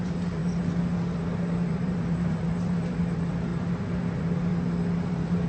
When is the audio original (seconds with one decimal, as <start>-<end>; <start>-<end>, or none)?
0.4-1.2; 3.5-4.0; 4.5-5.1